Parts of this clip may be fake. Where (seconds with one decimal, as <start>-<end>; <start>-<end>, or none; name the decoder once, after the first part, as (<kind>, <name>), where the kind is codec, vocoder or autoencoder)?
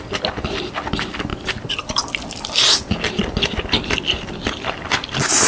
none